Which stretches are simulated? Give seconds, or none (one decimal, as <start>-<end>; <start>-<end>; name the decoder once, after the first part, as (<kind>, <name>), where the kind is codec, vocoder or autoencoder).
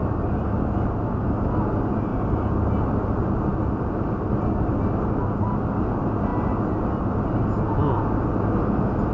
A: none